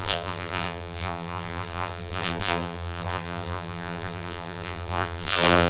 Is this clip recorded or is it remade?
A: remade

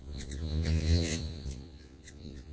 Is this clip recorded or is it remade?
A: remade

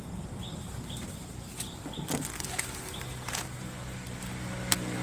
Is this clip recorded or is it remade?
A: recorded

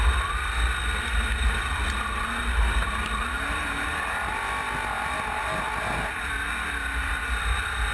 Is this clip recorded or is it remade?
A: recorded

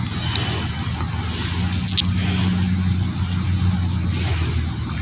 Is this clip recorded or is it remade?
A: recorded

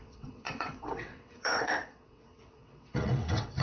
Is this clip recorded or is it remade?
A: remade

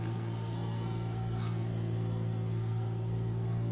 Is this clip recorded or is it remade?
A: remade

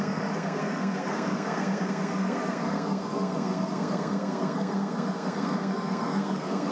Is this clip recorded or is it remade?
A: remade